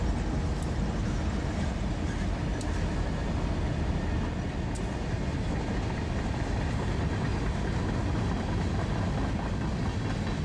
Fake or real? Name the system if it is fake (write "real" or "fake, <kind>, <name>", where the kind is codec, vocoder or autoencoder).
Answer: real